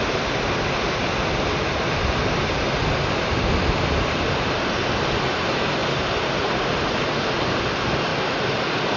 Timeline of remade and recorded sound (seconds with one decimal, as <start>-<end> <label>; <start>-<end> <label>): 0.0-9.0 recorded